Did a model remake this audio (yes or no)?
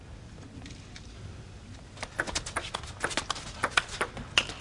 no